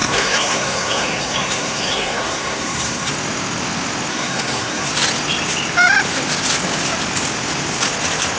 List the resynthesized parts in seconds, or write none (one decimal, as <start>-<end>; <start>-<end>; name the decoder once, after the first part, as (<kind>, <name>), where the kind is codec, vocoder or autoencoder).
0.0-3.1 (codec, SNAC); 4.1-4.9